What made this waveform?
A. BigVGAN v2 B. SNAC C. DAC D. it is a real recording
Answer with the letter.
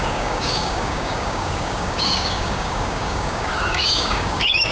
C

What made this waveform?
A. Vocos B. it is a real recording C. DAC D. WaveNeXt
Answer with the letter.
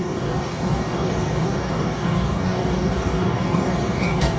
C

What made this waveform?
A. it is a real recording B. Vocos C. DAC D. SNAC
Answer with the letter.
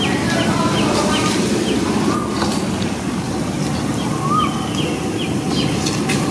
A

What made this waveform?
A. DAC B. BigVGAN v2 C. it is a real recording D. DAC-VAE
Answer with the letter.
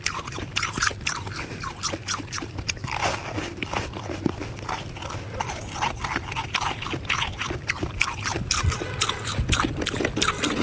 C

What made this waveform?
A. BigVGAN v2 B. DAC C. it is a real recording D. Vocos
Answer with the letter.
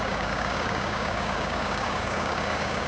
B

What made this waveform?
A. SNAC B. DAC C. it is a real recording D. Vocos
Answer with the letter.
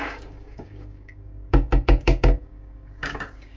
B